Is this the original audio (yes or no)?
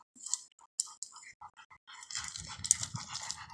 yes